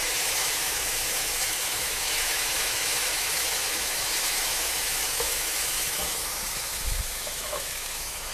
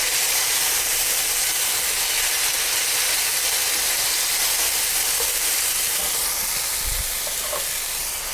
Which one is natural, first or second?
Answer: second